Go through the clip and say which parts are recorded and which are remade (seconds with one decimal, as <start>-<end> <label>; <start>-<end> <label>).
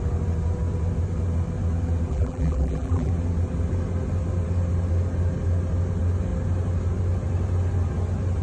0.0-2.1 recorded; 2.1-3.1 remade; 3.1-8.4 recorded